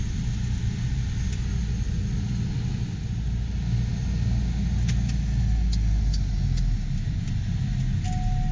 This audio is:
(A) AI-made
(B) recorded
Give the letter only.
B